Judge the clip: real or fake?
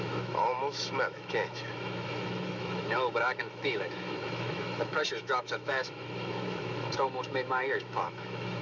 fake